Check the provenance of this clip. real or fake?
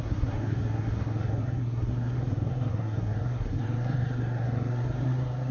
fake